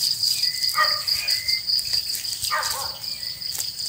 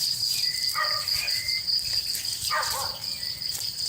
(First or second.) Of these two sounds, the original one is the first